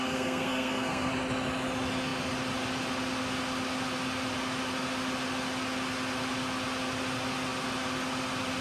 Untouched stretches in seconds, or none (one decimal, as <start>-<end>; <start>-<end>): 1.1-8.6